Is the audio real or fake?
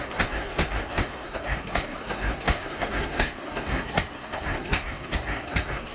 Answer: fake